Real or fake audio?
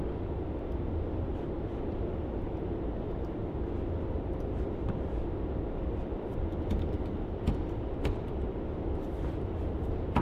fake